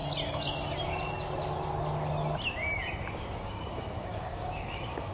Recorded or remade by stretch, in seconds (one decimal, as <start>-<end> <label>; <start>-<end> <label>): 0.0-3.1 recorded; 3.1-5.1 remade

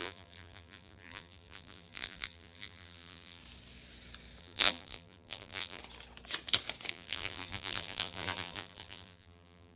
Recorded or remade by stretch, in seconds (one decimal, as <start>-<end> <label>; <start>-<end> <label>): 0.0-3.4 remade; 3.4-4.4 recorded; 4.4-5.8 remade; 5.8-6.9 recorded; 6.9-9.8 remade

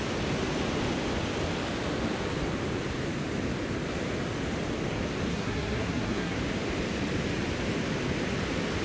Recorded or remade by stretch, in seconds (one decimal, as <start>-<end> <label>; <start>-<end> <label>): 0.0-5.3 recorded; 5.3-6.4 remade; 6.4-8.8 recorded

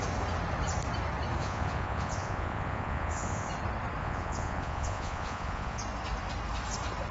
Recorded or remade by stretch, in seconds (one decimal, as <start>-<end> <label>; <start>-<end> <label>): 0.0-1.4 recorded; 1.4-3.5 remade; 3.5-4.0 recorded; 4.0-5.8 remade; 5.8-7.1 recorded

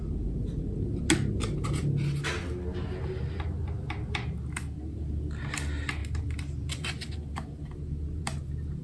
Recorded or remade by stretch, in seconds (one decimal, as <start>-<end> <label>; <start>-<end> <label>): 0.0-8.8 recorded

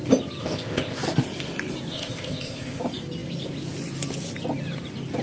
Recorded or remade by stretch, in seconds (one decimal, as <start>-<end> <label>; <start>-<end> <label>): 0.0-0.4 recorded; 0.4-1.0 remade; 1.0-1.9 recorded; 1.9-2.8 remade; 2.8-5.2 recorded

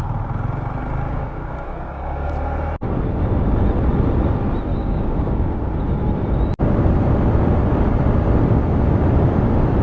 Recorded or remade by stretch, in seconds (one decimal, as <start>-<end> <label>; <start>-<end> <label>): 0.0-1.1 recorded; 1.1-2.3 remade; 2.3-4.7 recorded; 4.7-5.7 remade; 5.7-9.8 recorded